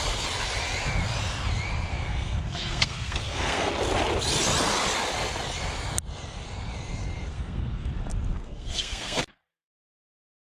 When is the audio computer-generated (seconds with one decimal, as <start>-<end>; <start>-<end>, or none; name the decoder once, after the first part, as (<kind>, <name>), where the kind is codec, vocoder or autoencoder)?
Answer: 1.9-3.7 (codec, SNAC); 7.3-7.9; 8.3-9.2